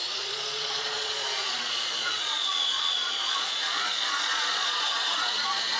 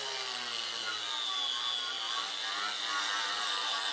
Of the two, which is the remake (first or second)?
first